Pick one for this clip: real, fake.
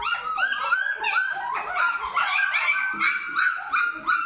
real